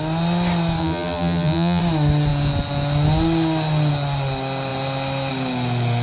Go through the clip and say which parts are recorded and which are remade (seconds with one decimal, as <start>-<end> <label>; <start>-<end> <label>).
0.0-0.8 recorded; 0.8-1.8 remade; 1.8-6.0 recorded